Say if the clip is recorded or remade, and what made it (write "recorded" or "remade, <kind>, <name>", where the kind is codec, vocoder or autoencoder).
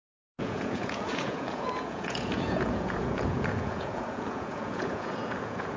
remade, vocoder, Vocos